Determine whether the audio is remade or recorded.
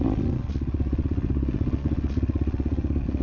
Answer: remade